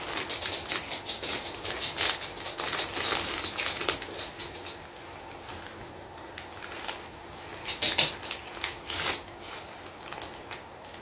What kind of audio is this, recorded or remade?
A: recorded